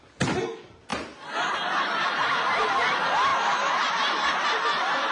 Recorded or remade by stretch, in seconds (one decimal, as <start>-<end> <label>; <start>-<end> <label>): 0.0-0.9 recorded; 0.9-2.1 remade; 2.1-5.1 recorded

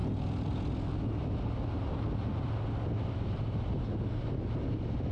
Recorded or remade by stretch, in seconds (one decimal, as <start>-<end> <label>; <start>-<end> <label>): 0.0-5.1 recorded

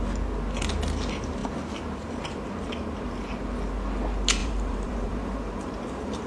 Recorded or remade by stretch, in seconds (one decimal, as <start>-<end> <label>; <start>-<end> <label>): 0.0-4.4 recorded; 4.4-6.3 remade

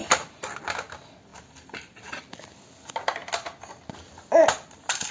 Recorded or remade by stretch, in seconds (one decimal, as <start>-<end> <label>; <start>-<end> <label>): 0.0-1.3 recorded; 1.3-2.2 remade; 2.2-5.1 recorded

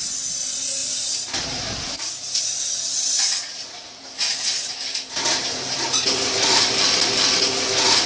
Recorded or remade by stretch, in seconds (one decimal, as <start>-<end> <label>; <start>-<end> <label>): 0.0-0.8 recorded; 0.8-2.0 remade; 2.0-3.5 recorded; 3.5-6.8 remade; 6.8-8.1 recorded

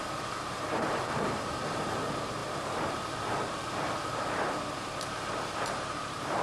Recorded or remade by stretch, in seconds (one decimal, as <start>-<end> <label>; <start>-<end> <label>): 0.0-6.4 remade

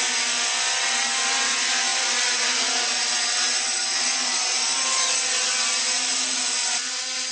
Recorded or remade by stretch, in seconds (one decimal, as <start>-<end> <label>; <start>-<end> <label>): 0.0-1.9 recorded; 1.9-3.0 remade; 3.0-7.3 recorded